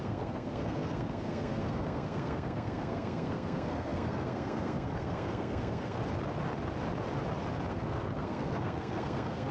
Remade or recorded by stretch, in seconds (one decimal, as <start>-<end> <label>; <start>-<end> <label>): 0.0-6.0 remade; 6.0-7.7 recorded; 7.7-9.5 remade